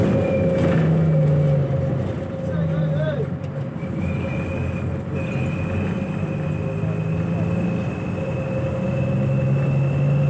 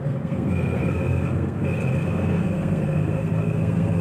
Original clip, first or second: first